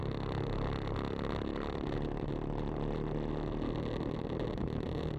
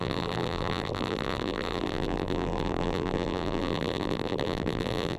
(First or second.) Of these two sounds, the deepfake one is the second